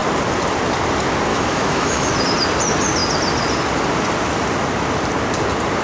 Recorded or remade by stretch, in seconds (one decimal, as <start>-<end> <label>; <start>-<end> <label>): 0.0-1.3 recorded; 1.3-2.1 remade; 2.1-5.8 recorded